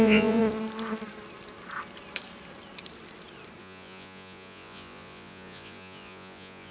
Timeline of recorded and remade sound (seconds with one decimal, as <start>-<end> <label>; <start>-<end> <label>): 0.0-0.4 remade; 0.4-3.6 recorded; 3.6-6.7 remade